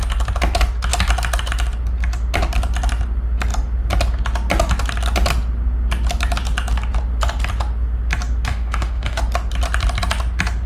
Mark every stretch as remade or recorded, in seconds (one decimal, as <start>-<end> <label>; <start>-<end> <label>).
0.0-8.5 recorded; 8.5-9.2 remade; 9.2-10.7 recorded